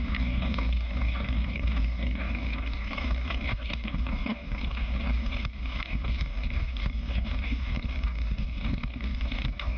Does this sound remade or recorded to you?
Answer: remade